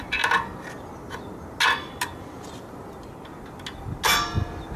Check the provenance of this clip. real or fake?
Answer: real